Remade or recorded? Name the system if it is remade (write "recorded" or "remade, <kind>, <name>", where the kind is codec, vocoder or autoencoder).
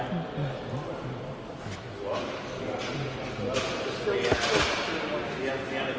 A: recorded